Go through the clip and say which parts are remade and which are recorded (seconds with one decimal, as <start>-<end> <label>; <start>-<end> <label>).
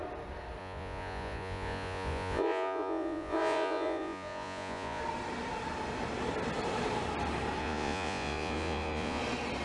0.0-0.6 recorded; 0.6-5.0 remade; 5.0-7.6 recorded; 7.6-9.2 remade; 9.2-9.6 recorded